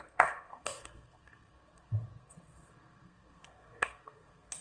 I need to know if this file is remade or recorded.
remade